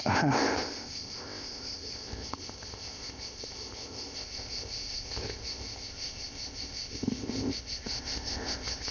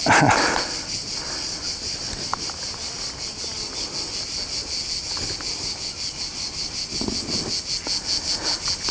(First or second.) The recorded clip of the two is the second